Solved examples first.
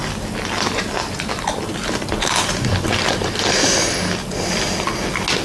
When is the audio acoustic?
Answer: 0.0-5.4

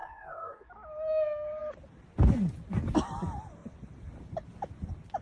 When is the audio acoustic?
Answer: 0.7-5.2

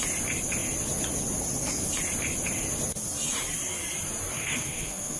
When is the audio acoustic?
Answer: 0.0-4.4

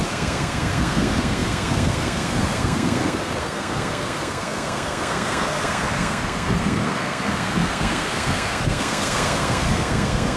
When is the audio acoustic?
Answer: none